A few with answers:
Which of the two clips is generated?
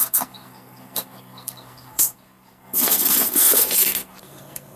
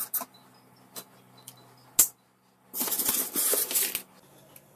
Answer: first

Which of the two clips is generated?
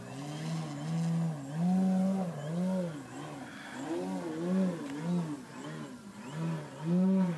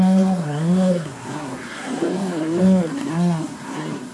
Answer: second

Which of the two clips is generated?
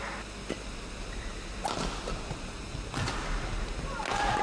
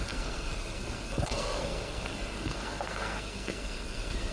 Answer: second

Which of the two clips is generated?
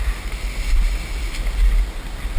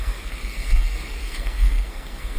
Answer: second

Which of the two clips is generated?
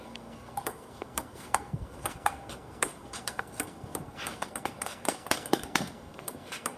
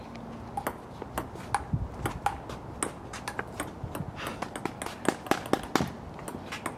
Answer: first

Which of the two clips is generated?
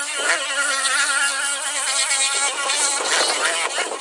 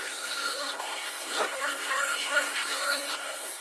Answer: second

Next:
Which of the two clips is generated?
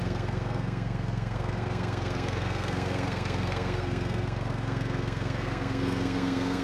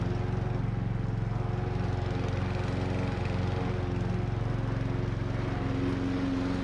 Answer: first